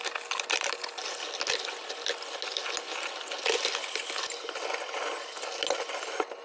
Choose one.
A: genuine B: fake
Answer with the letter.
A